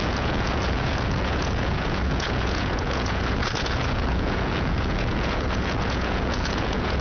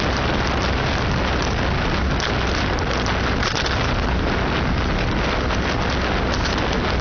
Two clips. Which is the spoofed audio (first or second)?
first